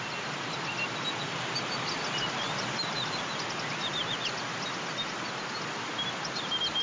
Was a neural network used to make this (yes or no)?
no